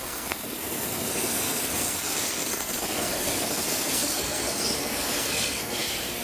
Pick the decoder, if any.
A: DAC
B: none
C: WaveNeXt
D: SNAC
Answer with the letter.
D